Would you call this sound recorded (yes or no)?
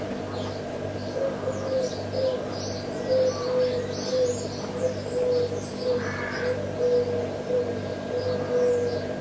yes